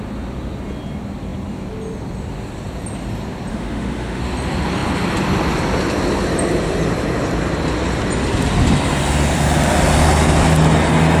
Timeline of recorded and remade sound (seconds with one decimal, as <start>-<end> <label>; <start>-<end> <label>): 0.0-3.5 recorded; 3.5-4.2 remade; 4.2-11.2 recorded